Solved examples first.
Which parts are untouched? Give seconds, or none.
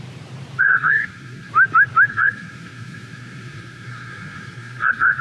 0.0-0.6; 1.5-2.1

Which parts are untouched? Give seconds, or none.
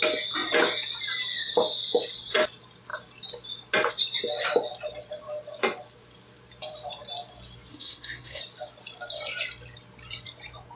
0.0-7.7; 8.4-10.8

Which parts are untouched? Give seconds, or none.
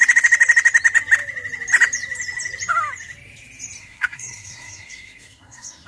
0.0-3.8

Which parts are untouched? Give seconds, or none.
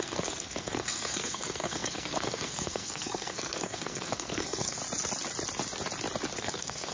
4.8-6.4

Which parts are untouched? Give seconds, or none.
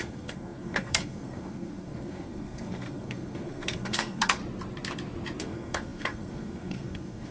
4.4-5.4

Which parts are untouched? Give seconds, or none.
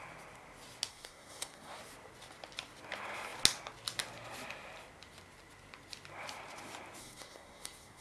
0.0-0.9; 1.8-7.0